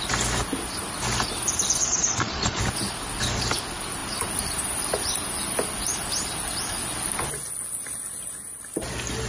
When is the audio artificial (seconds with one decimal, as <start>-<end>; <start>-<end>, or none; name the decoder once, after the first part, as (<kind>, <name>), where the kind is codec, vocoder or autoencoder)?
1.8-2.6 (vocoder, Vocos)

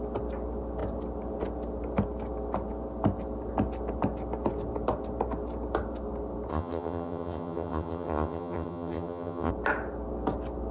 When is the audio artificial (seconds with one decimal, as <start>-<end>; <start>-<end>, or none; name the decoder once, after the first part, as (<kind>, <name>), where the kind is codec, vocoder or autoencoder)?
6.5-9.5 (vocoder, HiFi-GAN)

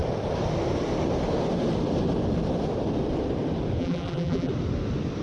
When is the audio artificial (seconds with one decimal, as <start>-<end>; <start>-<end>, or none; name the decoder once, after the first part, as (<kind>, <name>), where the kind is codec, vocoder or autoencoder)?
3.8-4.5 (vocoder, BigVGAN v2)

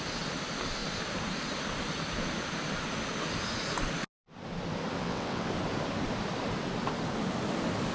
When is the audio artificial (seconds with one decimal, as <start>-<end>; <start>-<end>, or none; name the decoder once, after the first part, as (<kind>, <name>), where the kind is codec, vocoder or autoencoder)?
5.0-5.5 (vocoder, WaveNeXt)

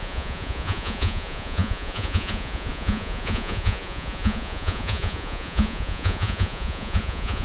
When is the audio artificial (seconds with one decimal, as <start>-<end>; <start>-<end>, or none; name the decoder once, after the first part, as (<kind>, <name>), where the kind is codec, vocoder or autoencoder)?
0.0-7.4 (vocoder, Vocos)

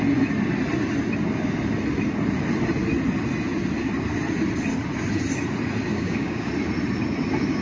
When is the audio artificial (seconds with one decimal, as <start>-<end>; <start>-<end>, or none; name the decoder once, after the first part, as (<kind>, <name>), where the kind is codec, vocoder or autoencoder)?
5.9-6.5 (codec, DAC)

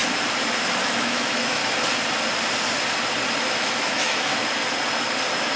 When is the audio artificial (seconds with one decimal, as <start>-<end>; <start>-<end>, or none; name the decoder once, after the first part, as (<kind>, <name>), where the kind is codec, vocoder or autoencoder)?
0.8-1.6 (autoencoder, DAC-VAE); 3.4-4.3

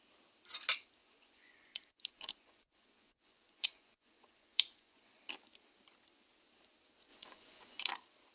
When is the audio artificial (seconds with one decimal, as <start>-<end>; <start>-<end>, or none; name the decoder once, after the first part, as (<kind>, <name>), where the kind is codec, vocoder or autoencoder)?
1.0-5.2 (vocoder, Vocos); 7.1-7.8